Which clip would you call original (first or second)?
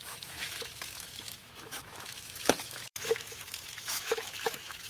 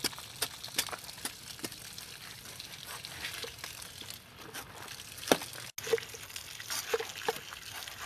second